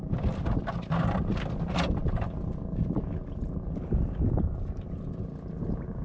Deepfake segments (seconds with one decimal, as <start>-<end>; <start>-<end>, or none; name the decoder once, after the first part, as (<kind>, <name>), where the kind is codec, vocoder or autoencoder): none